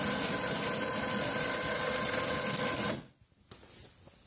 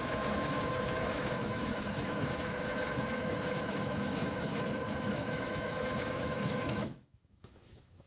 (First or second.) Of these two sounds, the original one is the first